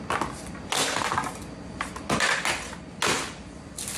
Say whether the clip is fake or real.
real